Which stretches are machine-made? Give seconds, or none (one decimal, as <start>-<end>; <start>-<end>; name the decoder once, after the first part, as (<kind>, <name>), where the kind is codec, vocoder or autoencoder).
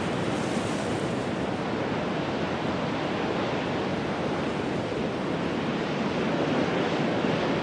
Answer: 3.9-4.6 (vocoder, BigVGAN v2); 5.7-6.2